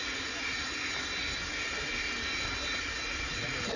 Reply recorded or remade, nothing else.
recorded